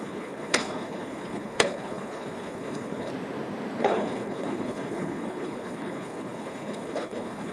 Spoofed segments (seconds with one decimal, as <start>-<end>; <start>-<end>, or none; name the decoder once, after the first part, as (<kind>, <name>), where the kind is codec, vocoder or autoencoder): 0.0-3.1 (codec, HILCodec); 3.8-7.5